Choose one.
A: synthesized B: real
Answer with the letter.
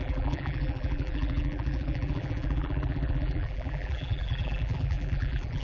A